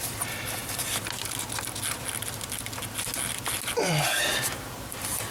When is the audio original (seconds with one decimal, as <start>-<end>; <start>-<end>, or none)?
0.0-5.3

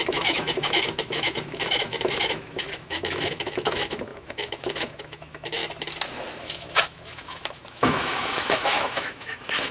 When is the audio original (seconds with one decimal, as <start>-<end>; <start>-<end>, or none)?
5.6-6.4

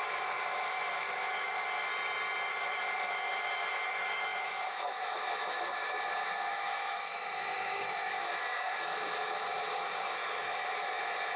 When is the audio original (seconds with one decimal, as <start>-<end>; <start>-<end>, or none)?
1.9-2.5

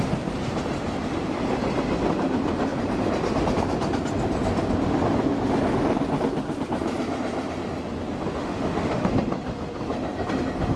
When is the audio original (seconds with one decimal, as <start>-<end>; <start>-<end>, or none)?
0.0-8.3; 9.1-10.8

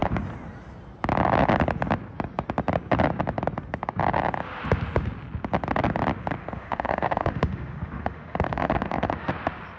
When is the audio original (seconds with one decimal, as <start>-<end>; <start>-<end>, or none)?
0.0-6.4; 9.3-9.8

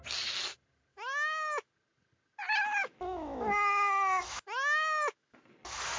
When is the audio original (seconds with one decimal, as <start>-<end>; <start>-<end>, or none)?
0.0-0.9; 1.7-2.8; 5.4-6.0

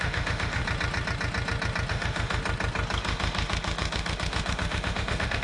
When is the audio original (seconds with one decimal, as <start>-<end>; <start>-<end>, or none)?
0.6-1.9; 2.4-3.0